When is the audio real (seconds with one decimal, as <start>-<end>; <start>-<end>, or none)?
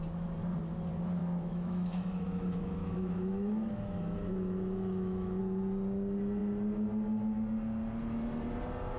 0.0-1.2; 5.4-9.0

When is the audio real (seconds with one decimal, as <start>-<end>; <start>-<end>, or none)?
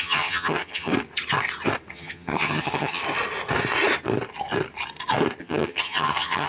0.9-1.9; 3.0-5.4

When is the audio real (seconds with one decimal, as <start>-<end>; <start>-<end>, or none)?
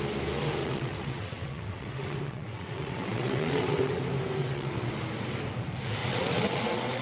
0.0-0.6; 4.0-4.4; 4.9-6.0